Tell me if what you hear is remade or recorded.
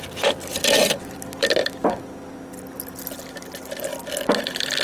recorded